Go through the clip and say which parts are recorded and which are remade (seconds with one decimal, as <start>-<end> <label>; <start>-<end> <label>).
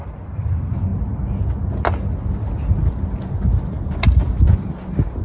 0.0-5.2 recorded